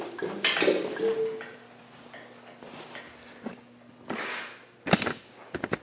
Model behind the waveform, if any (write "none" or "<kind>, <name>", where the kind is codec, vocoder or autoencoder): none